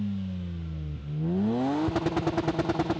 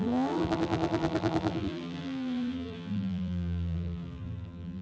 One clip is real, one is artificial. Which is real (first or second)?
first